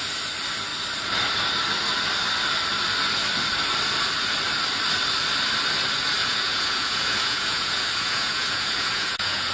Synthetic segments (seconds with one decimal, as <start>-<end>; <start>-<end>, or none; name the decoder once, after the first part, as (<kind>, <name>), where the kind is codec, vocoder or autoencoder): 6.2-9.5 (vocoder, Vocos)